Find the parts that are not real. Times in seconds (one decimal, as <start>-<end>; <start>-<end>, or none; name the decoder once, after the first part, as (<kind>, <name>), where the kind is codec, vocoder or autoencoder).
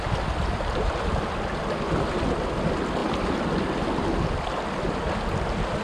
none